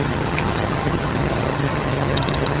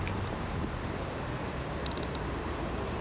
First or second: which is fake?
first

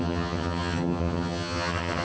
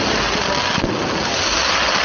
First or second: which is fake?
first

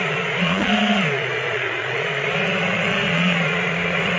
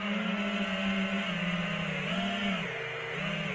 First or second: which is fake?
first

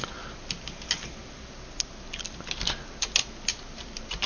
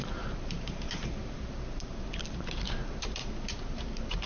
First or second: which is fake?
second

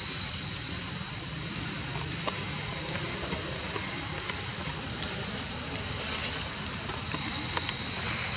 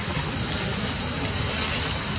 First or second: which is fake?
first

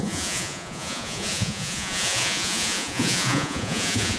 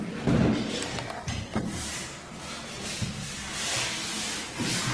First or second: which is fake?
first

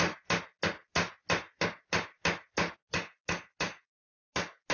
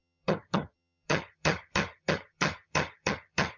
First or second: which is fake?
second